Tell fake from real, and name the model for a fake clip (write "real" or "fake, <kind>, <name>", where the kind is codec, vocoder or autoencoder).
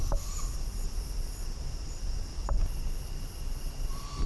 real